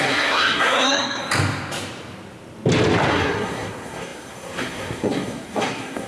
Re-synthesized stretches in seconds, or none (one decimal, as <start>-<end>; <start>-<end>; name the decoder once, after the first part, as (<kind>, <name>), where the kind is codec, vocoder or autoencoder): 0.0-1.2 (codec, SNAC); 3.1-6.1